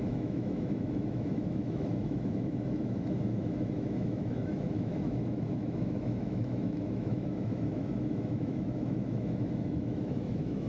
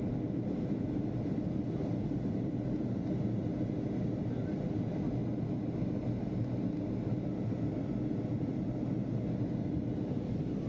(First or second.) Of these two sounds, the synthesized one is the first